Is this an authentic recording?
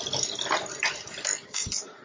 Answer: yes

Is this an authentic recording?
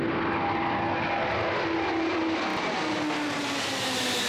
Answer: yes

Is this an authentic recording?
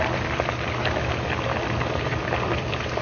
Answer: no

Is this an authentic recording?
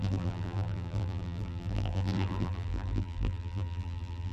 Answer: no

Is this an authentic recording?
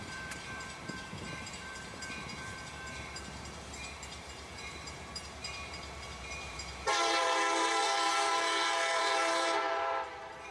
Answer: no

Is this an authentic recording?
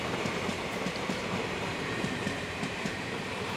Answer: no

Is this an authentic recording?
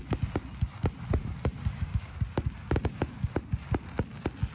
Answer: yes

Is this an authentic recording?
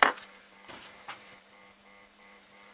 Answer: no